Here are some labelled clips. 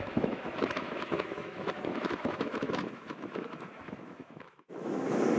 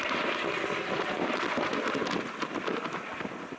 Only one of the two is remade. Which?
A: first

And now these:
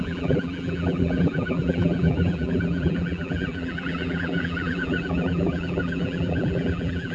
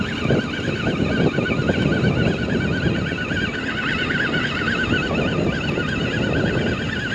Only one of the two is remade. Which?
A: first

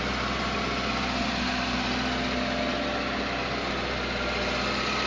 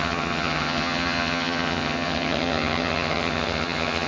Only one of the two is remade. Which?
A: second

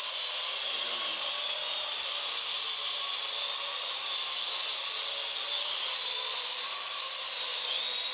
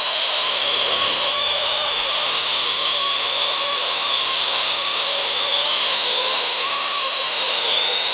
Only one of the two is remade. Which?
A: second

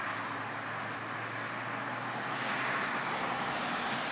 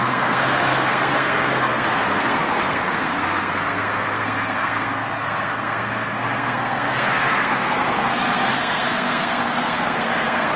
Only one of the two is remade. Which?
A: second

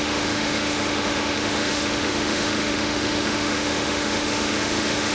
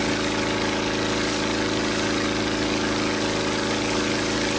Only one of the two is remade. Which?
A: first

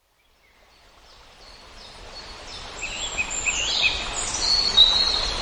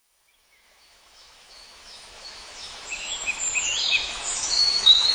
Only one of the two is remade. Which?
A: second